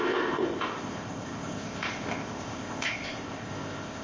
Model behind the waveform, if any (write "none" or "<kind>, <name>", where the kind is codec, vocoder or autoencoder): codec, ZipCodec